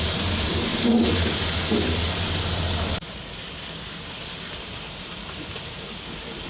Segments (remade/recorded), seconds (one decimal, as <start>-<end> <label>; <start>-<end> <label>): 0.0-0.7 remade; 0.7-4.6 recorded; 4.6-6.5 remade